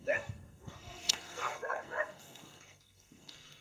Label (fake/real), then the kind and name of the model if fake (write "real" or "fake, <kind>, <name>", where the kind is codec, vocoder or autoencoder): fake, codec, SNAC